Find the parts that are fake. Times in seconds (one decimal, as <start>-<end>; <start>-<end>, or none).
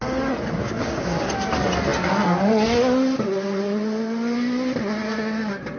0.6-1.2